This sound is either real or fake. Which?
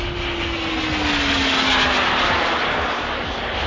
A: real